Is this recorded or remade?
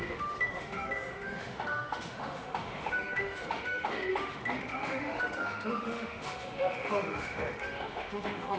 remade